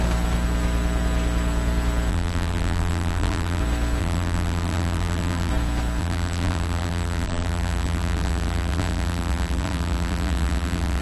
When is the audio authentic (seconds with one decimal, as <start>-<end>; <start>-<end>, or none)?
0.0-2.1; 3.6-4.0; 5.5-6.0

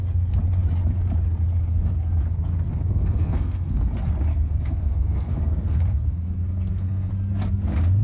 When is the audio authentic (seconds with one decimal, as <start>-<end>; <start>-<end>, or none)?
0.0-2.7; 3.9-4.3; 7.1-8.0

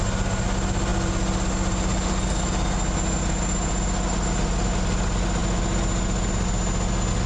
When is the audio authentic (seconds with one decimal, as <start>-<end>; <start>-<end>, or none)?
0.0-7.3